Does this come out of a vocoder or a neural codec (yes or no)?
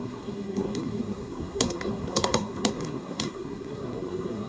yes